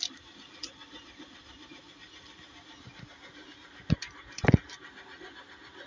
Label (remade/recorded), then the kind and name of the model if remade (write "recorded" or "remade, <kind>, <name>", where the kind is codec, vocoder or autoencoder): recorded